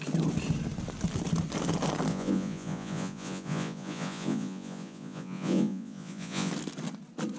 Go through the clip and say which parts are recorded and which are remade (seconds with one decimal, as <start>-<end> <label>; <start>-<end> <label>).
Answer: 0.0-2.1 recorded; 2.1-6.5 remade; 6.5-7.4 recorded